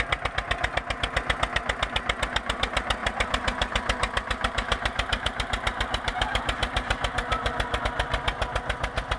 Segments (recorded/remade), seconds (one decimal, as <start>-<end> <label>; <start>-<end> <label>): 0.0-3.0 recorded; 3.0-7.8 remade; 7.8-9.2 recorded

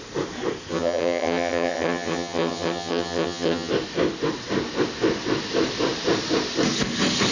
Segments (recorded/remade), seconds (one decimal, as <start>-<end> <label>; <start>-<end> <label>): 0.0-0.7 recorded; 0.7-3.7 remade; 3.7-7.3 recorded

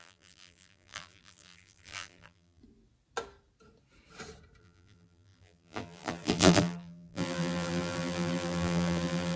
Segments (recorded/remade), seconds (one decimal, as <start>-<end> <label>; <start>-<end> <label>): 0.0-2.6 remade; 2.6-4.6 recorded; 4.6-9.4 remade

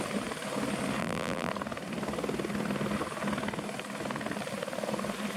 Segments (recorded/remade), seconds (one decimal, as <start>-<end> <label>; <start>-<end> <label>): 0.0-1.0 recorded; 1.0-1.5 remade; 1.5-5.4 recorded

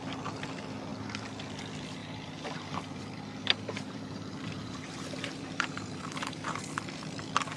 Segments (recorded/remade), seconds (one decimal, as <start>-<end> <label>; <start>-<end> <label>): 0.0-2.0 recorded; 2.0-6.6 remade; 6.6-7.6 recorded

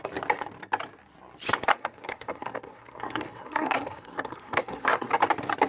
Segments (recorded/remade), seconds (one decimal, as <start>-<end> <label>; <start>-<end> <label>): 0.0-1.7 recorded; 1.7-5.1 remade; 5.1-5.7 recorded

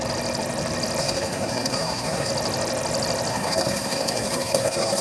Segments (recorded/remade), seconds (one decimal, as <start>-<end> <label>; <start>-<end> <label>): 0.0-1.0 recorded; 1.0-2.3 remade; 2.3-3.3 recorded; 3.3-5.0 remade